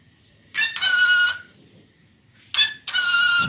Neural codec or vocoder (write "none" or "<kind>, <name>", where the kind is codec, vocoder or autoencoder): none